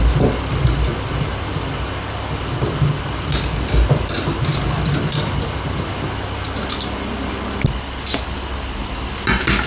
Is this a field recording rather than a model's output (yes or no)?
yes